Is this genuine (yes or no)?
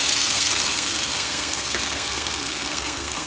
no